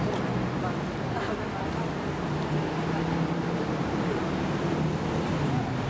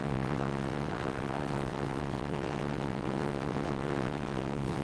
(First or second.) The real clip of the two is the first